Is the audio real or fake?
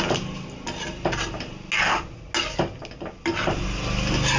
real